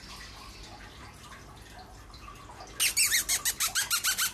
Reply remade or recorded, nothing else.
recorded